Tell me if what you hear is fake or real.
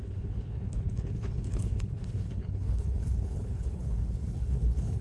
fake